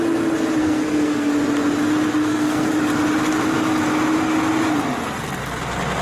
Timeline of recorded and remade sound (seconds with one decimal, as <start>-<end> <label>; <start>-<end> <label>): 0.0-0.6 recorded; 0.6-1.3 remade; 1.3-2.2 recorded; 2.2-2.7 remade; 2.7-6.0 recorded